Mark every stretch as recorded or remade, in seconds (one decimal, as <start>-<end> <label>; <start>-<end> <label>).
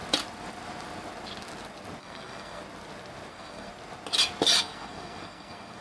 0.0-2.0 recorded; 2.0-2.6 remade; 2.6-3.3 recorded; 3.3-3.7 remade; 3.7-4.6 recorded; 4.6-5.8 remade